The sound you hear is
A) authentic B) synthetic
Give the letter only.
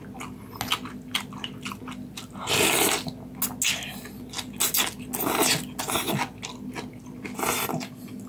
A